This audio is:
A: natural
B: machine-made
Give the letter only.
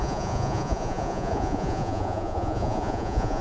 B